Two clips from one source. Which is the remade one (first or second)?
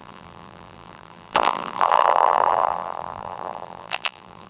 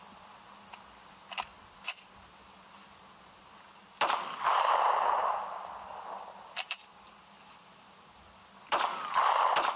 first